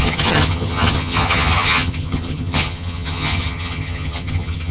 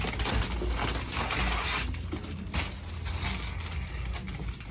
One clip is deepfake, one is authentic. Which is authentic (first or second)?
second